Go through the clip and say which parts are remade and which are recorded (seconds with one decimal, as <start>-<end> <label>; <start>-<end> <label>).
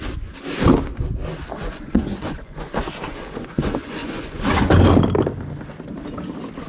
0.0-1.6 recorded; 1.6-4.7 remade; 4.7-6.7 recorded